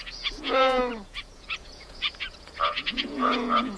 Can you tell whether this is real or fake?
fake